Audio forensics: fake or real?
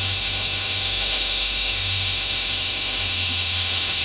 fake